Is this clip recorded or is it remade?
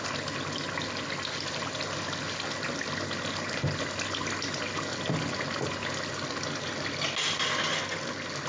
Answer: recorded